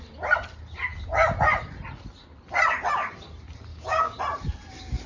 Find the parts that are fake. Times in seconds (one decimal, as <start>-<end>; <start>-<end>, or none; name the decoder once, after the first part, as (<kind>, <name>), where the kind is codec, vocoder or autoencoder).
3.7-4.2 (codec, DAC)